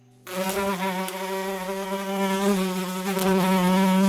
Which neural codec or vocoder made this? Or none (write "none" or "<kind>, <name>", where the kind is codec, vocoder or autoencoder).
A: none